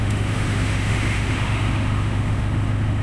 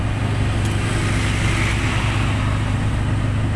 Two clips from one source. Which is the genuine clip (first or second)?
second